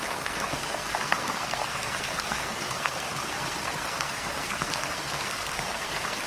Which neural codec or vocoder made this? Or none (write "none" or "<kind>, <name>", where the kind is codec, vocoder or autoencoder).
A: codec, SNAC